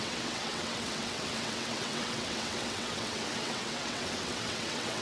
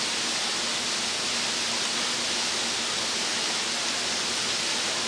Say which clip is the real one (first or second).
second